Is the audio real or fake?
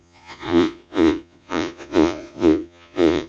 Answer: fake